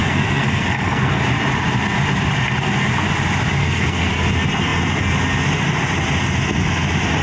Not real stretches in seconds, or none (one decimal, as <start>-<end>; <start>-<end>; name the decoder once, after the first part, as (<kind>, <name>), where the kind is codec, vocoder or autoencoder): 0.0-1.2 (codec, SNAC); 3.6-4.1